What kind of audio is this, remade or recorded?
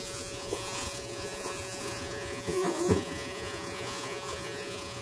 remade